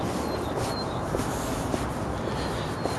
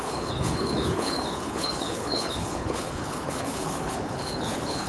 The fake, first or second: second